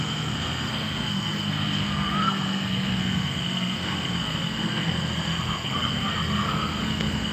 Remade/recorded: remade